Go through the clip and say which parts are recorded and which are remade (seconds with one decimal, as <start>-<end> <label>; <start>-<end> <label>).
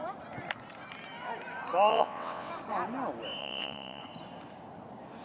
0.0-1.9 recorded; 1.9-2.5 remade; 2.5-3.4 recorded; 3.4-4.0 remade; 4.0-5.2 recorded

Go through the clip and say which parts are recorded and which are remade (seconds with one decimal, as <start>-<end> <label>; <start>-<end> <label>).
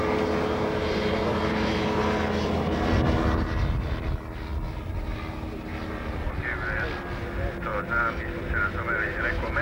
0.0-9.6 recorded